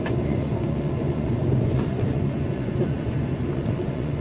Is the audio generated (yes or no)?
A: yes